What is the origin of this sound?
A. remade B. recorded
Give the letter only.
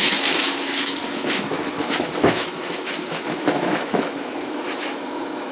A